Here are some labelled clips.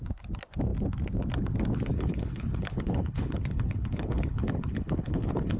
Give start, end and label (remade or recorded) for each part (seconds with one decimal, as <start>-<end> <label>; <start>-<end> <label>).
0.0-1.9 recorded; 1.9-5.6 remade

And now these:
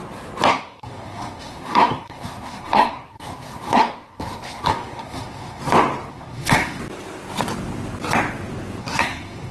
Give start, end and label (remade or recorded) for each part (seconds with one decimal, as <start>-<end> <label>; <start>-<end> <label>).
0.0-0.5 recorded; 0.5-5.6 remade; 5.6-6.1 recorded; 6.1-6.8 remade; 6.8-8.8 recorded; 8.8-9.5 remade

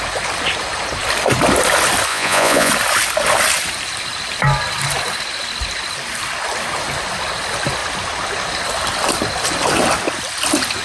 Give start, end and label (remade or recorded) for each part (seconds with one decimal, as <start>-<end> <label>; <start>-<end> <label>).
0.0-2.1 recorded; 2.1-2.7 remade; 2.7-10.8 recorded

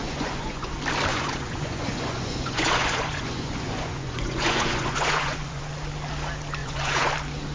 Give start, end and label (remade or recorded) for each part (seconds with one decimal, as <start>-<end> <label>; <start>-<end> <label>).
0.0-0.7 remade; 0.7-1.1 recorded; 1.1-5.6 remade; 5.6-6.6 recorded; 6.6-7.1 remade; 7.1-7.5 recorded